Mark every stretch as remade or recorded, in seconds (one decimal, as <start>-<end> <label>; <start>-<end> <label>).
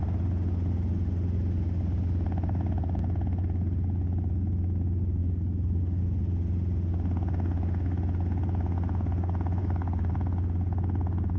0.0-5.2 recorded; 5.2-6.0 remade; 6.0-9.6 recorded; 9.6-10.1 remade; 10.1-11.4 recorded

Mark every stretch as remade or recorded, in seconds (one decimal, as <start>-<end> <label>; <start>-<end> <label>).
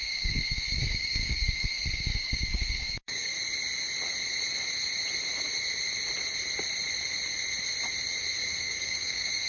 0.0-3.3 remade; 3.3-8.6 recorded; 8.6-9.5 remade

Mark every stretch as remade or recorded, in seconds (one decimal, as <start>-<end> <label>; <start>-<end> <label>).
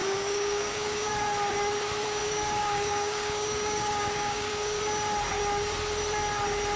0.0-1.1 remade; 1.1-2.2 recorded; 2.2-4.8 remade; 4.8-6.8 recorded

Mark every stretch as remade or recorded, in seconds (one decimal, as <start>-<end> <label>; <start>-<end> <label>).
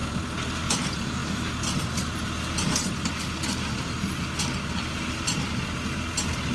0.0-6.5 recorded